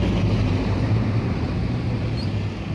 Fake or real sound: fake